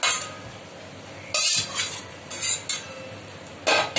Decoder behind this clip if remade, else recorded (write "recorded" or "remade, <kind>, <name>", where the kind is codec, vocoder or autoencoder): recorded